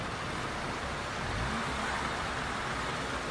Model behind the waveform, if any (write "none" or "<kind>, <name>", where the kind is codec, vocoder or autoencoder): none